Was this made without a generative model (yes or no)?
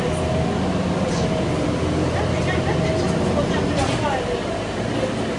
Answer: yes